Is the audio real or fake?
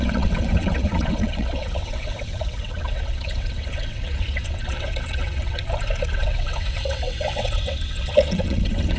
fake